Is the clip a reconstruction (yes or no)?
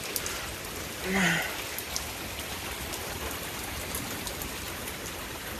no